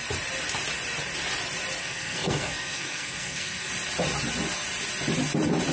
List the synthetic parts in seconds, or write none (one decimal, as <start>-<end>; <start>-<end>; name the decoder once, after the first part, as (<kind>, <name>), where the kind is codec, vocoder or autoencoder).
1.8-3.7 (codec, SNAC)